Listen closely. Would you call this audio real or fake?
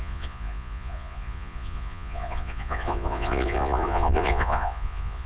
fake